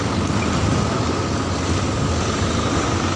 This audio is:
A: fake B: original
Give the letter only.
B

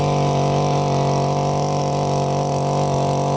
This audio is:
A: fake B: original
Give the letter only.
B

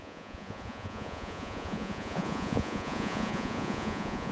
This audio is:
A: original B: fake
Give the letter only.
B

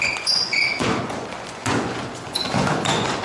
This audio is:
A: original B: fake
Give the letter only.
B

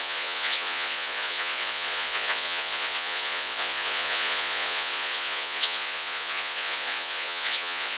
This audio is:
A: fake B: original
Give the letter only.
A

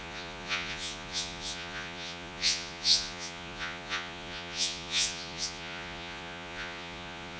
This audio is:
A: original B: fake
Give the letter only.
B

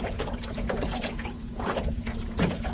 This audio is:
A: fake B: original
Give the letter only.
A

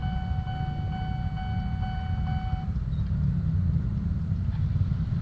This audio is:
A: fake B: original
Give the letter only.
B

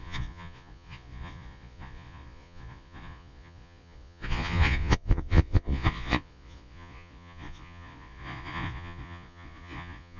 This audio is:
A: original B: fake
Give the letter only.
B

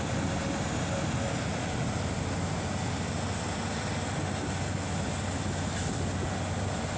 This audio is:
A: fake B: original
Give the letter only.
B